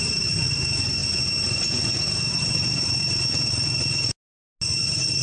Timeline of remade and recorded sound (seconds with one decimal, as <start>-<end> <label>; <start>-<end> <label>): 0.0-5.2 recorded